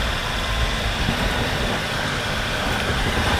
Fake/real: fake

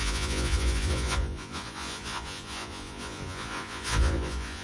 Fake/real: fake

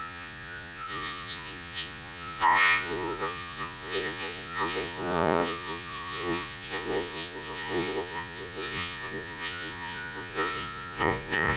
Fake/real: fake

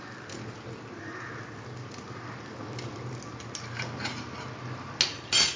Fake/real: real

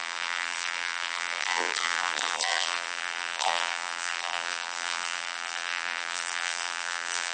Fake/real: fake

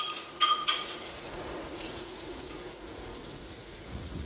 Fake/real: fake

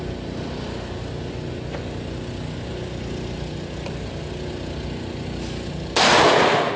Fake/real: real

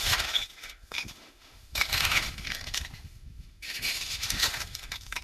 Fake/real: fake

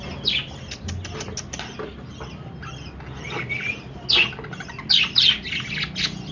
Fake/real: real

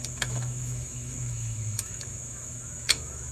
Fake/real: fake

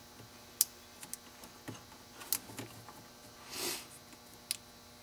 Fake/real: real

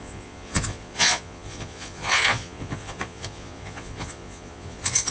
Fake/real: fake